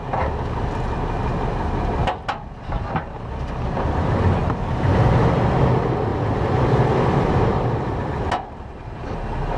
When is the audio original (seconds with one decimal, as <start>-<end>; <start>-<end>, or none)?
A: 0.0-6.1; 6.9-7.5; 8.1-9.6